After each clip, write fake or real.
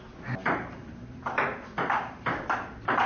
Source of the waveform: real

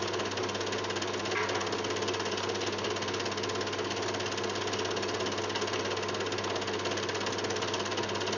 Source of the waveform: real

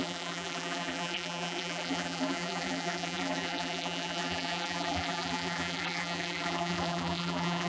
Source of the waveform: fake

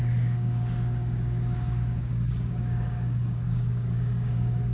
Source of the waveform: fake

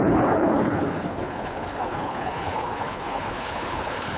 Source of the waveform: fake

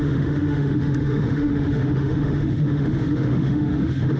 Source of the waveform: fake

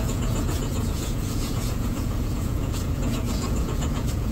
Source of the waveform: fake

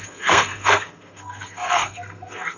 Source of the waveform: fake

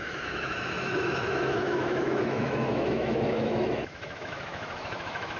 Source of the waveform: fake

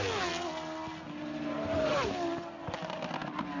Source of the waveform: real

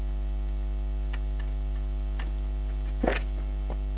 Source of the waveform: real